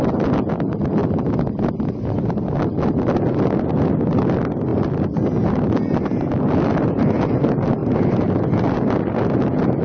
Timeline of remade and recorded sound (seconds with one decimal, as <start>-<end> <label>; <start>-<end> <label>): 0.0-9.8 recorded

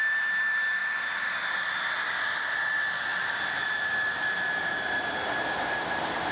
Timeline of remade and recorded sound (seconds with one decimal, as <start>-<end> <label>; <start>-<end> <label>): 0.0-6.3 recorded

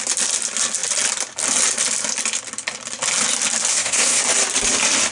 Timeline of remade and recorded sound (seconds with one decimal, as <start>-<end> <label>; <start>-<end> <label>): 0.0-3.7 recorded; 3.7-4.2 remade; 4.2-5.1 recorded